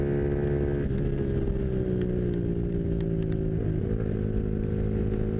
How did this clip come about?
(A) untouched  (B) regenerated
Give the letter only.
A